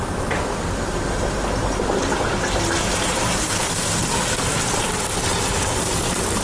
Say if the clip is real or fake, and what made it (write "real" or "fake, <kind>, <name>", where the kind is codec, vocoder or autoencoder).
real